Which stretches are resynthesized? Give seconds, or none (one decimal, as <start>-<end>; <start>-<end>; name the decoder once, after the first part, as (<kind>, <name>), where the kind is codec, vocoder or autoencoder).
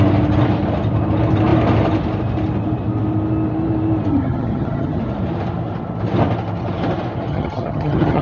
4.1-5.0 (vocoder, HiFi-GAN); 7.3-8.2